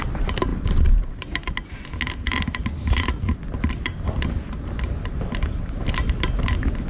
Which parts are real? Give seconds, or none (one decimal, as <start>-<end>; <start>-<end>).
0.0-6.9